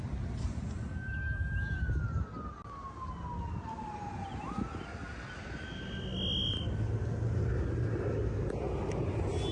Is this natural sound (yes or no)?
yes